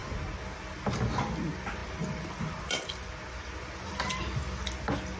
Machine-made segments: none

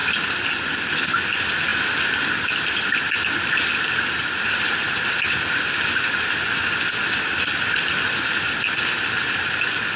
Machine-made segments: none

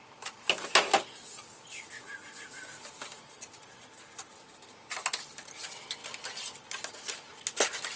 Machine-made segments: none

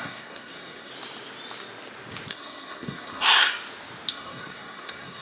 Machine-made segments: 0.0-0.9; 2.3-3.5; 4.1-5.2